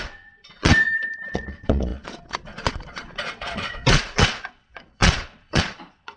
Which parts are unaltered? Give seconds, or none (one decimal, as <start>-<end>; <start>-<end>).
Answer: none